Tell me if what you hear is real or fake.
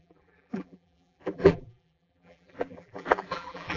fake